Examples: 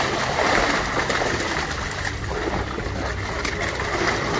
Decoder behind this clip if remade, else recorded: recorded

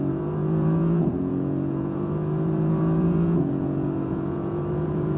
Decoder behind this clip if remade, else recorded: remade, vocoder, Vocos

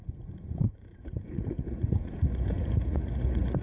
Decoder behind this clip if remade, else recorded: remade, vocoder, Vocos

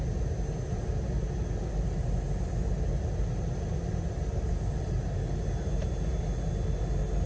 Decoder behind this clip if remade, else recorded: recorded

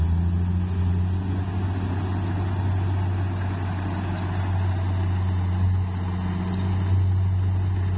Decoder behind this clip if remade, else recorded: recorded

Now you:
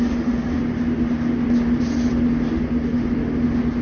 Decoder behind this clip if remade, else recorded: recorded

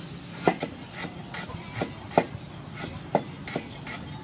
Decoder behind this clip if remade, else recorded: recorded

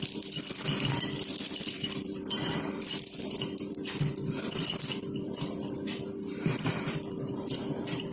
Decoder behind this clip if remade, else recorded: remade, vocoder, BigVGAN v2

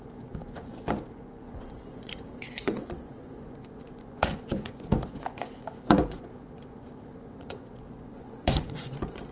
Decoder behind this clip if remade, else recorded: remade, vocoder, Vocos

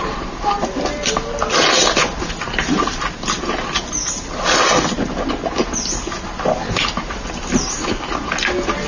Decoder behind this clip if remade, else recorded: recorded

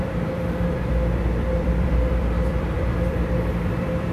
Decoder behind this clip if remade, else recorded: remade, vocoder, BigVGAN v2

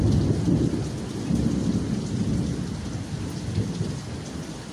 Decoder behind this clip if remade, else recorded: recorded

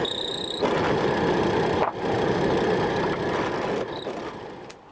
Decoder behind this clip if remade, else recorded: recorded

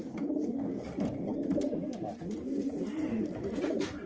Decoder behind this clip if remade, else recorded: remade, vocoder, BigVGAN v2